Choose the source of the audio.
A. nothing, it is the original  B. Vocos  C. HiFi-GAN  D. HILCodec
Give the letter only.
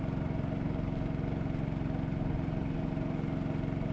A